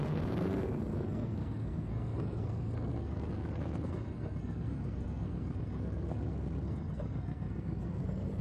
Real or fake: fake